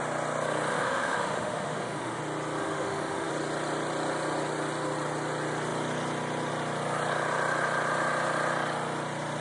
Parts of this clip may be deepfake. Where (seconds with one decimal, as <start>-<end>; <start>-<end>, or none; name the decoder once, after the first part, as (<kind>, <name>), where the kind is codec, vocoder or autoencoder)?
0.7-2.2 (autoencoder, DAC-VAE); 2.6-3.3

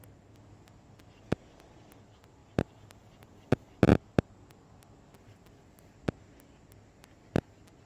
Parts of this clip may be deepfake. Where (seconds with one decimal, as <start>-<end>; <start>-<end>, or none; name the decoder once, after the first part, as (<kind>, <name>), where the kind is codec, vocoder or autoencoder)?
none

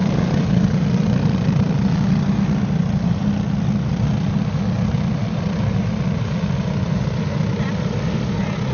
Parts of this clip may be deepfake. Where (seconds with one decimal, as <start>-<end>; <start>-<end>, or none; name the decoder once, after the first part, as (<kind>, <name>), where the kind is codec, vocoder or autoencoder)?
none

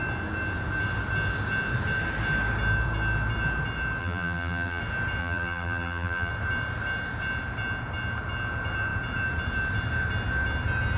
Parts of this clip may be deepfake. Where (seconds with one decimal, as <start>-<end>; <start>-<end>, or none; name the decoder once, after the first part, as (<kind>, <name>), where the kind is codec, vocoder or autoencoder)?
4.0-4.8 (vocoder, BigVGAN v2); 5.2-6.3